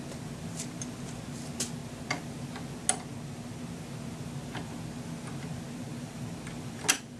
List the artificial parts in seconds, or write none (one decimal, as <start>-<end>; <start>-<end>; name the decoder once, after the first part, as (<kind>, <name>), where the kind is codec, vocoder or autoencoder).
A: none

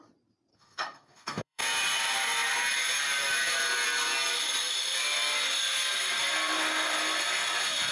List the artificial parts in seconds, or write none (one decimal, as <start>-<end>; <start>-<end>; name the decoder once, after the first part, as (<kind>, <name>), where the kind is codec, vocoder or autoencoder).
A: 0.5-1.6 (codec, SNAC)

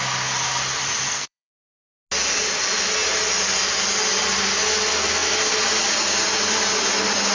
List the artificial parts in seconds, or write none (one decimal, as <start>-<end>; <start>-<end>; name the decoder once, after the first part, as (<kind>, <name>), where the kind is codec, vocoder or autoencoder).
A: 1.1-1.7 (codec, SNAC)